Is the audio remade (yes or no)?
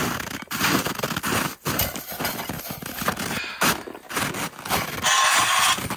no